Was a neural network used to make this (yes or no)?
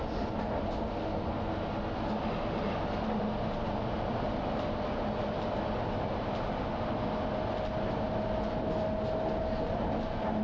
no